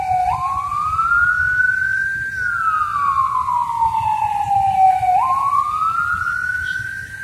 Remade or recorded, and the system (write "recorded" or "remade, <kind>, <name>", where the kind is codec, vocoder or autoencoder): recorded